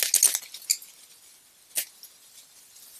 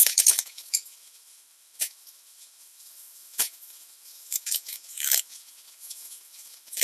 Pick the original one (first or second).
first